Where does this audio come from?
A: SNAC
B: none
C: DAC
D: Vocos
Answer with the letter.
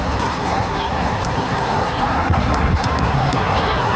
A